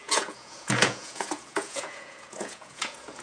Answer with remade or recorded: remade